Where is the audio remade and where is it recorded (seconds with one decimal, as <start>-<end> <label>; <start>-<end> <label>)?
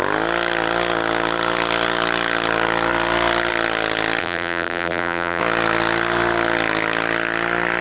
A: 0.0-4.2 recorded; 4.2-5.4 remade; 5.4-7.8 recorded